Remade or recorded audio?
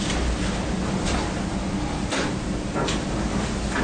recorded